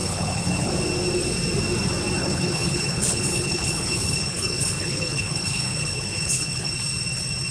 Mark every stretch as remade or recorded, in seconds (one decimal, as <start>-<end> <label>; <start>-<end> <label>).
0.0-0.7 remade; 0.7-2.2 recorded; 2.2-6.7 remade; 6.7-7.5 recorded

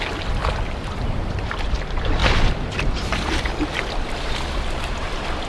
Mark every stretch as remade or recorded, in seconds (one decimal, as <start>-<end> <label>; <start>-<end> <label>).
0.0-0.4 recorded; 0.4-1.8 remade; 1.8-2.2 recorded; 2.2-5.5 remade

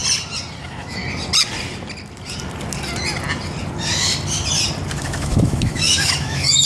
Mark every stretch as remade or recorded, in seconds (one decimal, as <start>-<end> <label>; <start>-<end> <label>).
0.0-0.6 recorded; 0.6-1.0 remade; 1.0-5.0 recorded; 5.0-6.7 remade

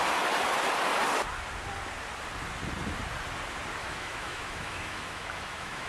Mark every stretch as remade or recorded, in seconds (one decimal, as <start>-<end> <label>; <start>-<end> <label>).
0.0-3.8 recorded; 3.8-5.9 remade

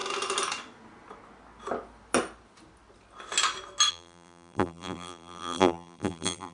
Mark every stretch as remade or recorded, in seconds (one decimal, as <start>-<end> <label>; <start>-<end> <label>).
0.0-3.9 recorded; 3.9-6.5 remade

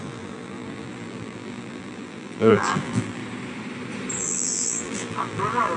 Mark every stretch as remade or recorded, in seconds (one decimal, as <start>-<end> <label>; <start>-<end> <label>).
0.0-3.2 remade; 3.2-4.2 recorded; 4.2-5.8 remade

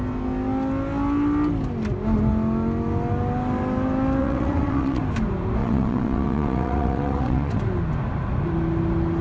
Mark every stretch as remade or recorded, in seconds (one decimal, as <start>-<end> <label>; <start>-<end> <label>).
0.0-4.2 recorded; 4.2-5.0 remade; 5.0-5.6 recorded; 5.6-7.6 remade; 7.6-9.2 recorded

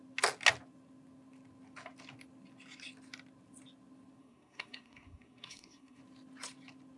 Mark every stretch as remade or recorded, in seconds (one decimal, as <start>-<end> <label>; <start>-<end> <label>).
0.0-4.2 recorded; 4.2-6.0 remade; 6.0-7.0 recorded